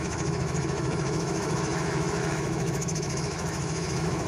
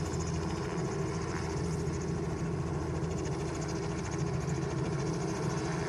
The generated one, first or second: first